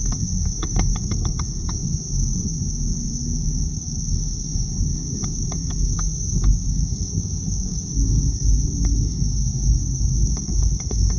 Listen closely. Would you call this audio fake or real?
fake